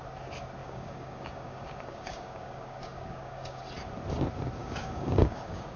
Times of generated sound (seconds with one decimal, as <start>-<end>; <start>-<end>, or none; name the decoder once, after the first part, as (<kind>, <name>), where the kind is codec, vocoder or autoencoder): 0.6-3.6 (codec, DAC); 4.6-5.8